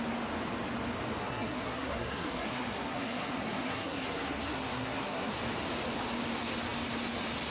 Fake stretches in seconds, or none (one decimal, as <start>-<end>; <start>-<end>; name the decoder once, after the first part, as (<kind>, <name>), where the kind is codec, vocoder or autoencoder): 1.2-5.3 (codec, SNAC)